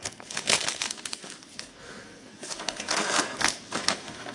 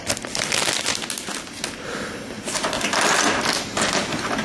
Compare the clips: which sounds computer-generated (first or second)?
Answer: first